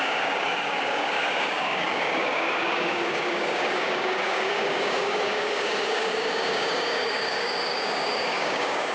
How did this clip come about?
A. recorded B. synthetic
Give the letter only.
B